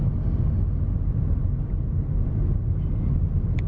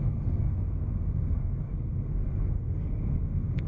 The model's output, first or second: second